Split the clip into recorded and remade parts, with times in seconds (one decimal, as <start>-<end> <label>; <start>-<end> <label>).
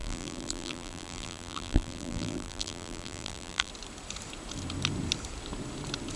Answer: 0.0-3.7 remade; 3.7-6.2 recorded